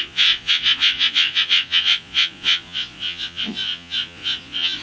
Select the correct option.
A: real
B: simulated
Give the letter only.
B